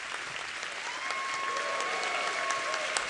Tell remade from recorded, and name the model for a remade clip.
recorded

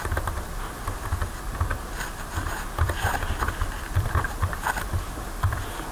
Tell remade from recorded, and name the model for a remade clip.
recorded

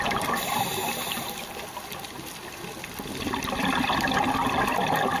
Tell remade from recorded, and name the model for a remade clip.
recorded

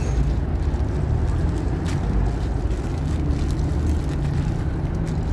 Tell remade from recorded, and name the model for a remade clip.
recorded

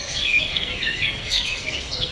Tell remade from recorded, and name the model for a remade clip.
remade, codec, SNAC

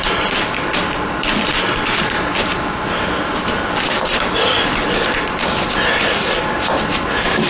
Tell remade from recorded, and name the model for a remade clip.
recorded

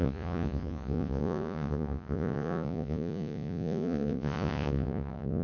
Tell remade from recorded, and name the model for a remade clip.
remade, vocoder, Vocos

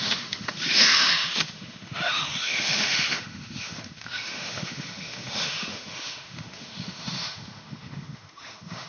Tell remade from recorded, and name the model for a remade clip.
remade, autoencoder, DAC-VAE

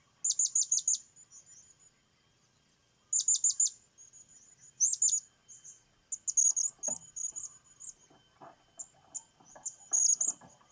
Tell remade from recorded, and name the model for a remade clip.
recorded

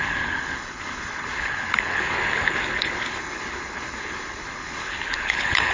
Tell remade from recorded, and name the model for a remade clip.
remade, codec, HILCodec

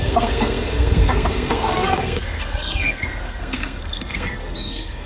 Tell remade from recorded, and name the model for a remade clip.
remade, codec, SNAC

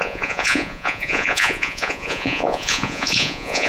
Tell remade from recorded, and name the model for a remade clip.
remade, vocoder, Vocos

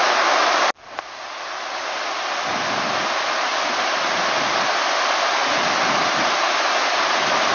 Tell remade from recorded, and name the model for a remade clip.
recorded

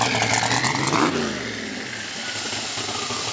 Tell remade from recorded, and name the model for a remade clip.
recorded